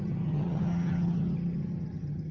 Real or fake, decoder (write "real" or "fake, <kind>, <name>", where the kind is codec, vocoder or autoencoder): fake, vocoder, HiFi-GAN